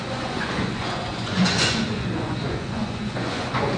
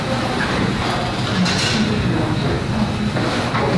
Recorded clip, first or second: second